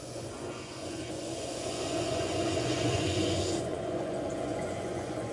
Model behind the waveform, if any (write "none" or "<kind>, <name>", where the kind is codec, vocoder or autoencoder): vocoder, Vocos